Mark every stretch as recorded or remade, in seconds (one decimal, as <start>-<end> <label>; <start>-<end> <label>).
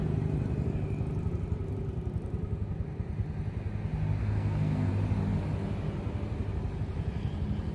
0.0-4.2 recorded; 4.2-4.9 remade; 4.9-7.7 recorded